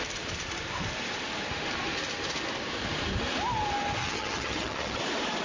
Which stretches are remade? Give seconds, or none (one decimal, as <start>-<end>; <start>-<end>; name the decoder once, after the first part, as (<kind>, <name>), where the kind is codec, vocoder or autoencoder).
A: 4.0-5.0 (vocoder, HiFi-GAN)